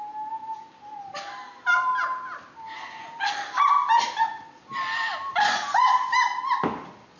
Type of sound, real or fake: real